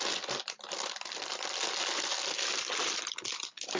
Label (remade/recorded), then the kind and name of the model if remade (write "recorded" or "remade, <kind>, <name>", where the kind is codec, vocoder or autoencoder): recorded